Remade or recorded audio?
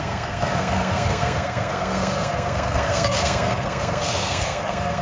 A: remade